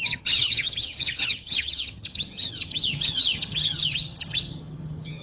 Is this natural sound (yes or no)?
no